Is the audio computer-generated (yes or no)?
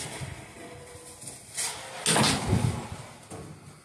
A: no